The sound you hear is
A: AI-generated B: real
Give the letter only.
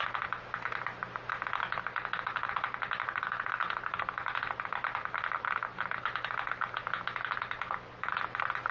B